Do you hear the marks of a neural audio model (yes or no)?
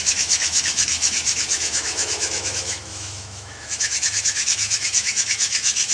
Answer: yes